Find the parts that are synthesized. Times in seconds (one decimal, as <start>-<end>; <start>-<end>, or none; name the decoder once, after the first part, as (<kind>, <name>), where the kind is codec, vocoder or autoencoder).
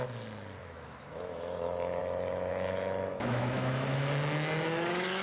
0.6-2.0 (autoencoder, DAC-VAE); 2.5-4.1